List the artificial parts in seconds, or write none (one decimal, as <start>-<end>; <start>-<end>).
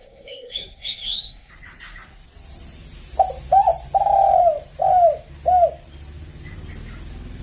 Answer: 0.0-1.5